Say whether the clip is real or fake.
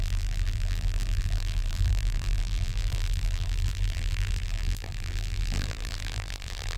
fake